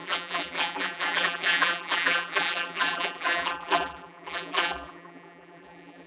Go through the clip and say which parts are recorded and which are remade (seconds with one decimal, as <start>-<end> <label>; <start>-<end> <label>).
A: 0.0-6.1 remade